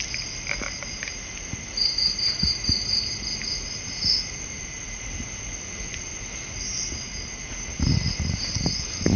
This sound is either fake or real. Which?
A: real